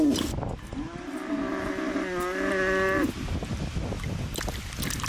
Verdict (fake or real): real